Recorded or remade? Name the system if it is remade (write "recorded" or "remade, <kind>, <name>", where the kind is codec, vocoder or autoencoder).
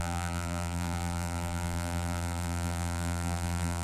remade, vocoder, BigVGAN v2